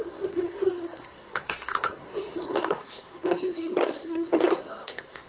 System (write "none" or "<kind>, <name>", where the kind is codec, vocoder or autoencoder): codec, SNAC